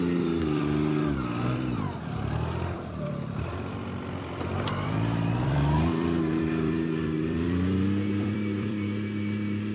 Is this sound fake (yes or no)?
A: yes